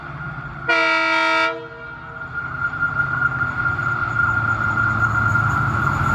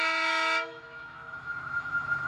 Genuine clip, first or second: first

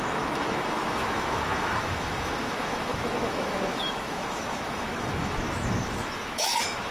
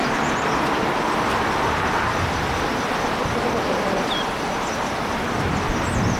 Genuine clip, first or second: second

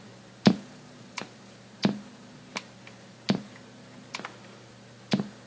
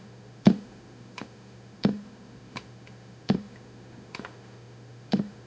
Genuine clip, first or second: first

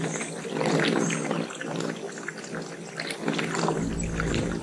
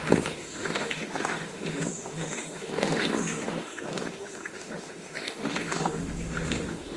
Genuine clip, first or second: first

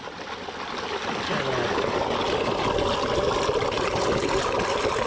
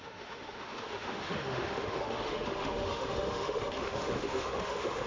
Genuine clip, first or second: first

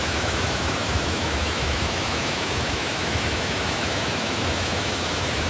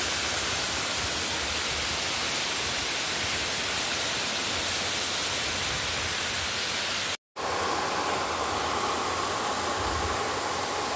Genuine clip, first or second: second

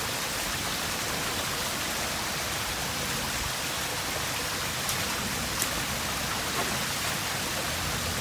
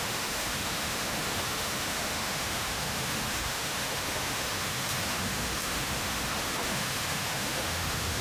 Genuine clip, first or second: first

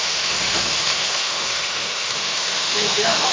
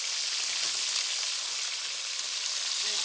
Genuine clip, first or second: second